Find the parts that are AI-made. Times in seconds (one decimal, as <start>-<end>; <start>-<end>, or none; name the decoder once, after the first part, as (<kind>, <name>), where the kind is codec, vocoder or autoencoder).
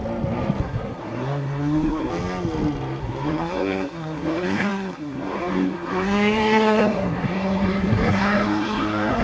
0.6-2.1 (codec, SNAC); 3.0-9.2